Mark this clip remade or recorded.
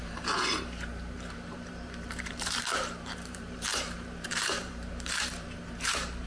remade